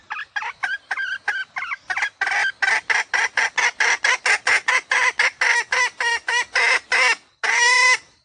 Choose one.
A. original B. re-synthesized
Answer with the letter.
A